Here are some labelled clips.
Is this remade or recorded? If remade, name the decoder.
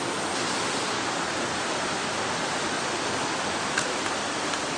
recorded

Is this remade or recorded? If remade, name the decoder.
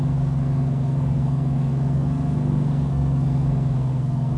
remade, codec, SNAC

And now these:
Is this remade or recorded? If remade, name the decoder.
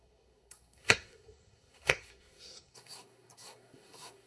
remade, codec, SNAC